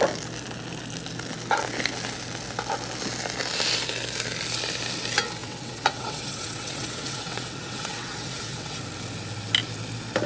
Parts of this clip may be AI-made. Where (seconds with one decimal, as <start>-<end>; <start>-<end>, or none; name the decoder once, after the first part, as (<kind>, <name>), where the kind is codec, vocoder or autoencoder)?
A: 5.4-8.8 (vocoder, WaveNeXt)